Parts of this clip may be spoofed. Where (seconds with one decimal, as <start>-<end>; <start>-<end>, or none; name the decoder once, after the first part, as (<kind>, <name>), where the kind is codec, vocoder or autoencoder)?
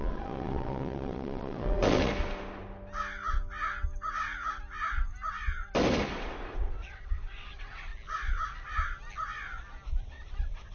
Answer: 0.0-2.1 (vocoder, WaveNeXt); 6.1-7.9; 10.0-10.7